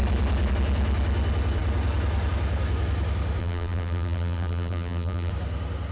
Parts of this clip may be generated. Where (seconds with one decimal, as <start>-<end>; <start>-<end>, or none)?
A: 3.4-5.3